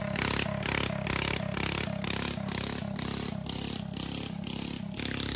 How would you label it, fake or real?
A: real